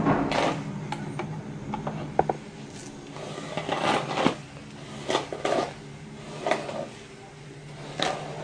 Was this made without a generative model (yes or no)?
yes